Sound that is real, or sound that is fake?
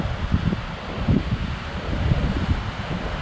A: real